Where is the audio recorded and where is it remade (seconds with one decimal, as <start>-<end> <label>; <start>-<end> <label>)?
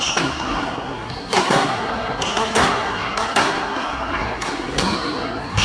0.0-5.6 remade